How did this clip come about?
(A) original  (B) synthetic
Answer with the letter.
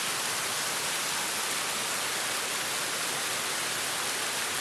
A